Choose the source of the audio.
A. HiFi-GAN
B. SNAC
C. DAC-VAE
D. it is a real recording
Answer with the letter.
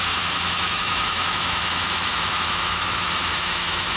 C